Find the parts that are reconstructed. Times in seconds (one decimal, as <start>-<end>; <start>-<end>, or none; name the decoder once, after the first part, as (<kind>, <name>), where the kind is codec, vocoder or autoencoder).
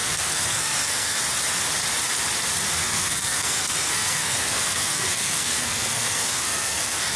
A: 0.0-1.2 (codec, SNAC); 2.8-7.2